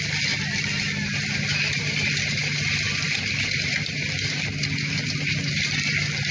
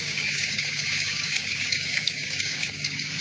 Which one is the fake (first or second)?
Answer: second